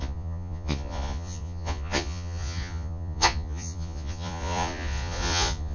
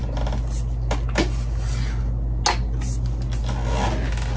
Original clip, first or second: second